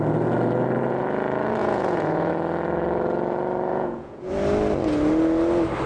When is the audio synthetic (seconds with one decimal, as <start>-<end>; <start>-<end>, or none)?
1.6-2.3; 3.7-4.3